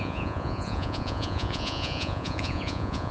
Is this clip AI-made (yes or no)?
yes